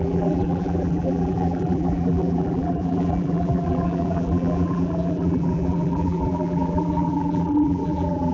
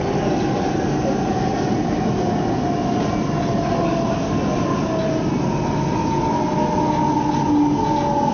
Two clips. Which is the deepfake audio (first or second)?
first